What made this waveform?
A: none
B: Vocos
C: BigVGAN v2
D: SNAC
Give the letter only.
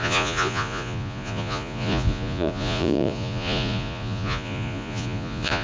B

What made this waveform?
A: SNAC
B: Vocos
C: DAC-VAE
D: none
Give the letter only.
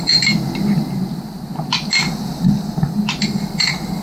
D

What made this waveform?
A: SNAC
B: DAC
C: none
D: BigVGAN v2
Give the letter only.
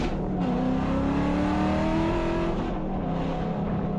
C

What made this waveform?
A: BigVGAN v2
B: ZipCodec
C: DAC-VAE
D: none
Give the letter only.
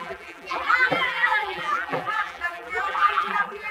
A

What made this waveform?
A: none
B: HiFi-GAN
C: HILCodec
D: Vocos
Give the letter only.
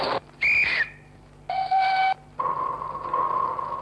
A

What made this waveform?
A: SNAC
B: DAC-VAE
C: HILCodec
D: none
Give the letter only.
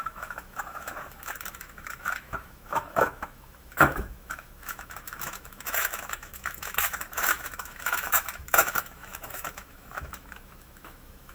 B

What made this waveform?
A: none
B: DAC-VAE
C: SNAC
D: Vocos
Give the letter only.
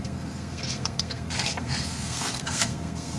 C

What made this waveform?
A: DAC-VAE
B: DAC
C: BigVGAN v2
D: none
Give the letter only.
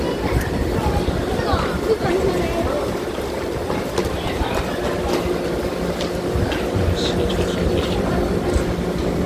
D